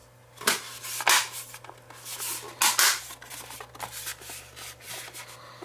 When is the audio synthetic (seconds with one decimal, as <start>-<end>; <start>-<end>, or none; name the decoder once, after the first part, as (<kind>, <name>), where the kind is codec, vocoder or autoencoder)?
4.1-4.9 (vocoder, BigVGAN v2)